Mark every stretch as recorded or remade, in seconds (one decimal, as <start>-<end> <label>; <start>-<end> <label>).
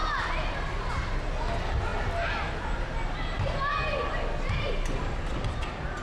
0.0-6.0 recorded